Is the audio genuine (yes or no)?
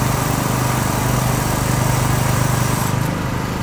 yes